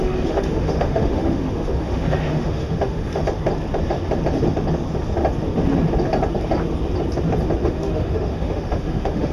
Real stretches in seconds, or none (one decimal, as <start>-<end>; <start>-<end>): 3.2-7.6